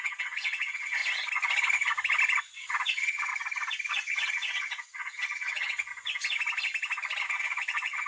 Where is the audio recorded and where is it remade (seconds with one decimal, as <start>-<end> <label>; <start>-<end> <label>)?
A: 0.0-1.0 remade; 1.0-2.4 recorded; 2.4-3.3 remade; 3.3-3.9 recorded; 3.9-5.9 remade; 5.9-7.2 recorded; 7.2-8.1 remade